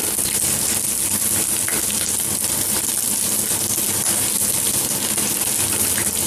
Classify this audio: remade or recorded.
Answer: recorded